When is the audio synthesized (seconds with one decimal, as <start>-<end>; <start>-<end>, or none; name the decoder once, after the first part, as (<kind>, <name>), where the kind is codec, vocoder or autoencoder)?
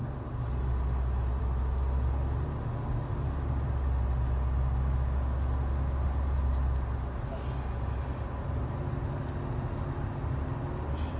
none